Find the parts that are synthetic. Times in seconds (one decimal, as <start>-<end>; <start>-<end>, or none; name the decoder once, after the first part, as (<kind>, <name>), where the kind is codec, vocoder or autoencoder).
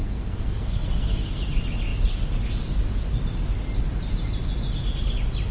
0.0-1.4 (codec, SNAC)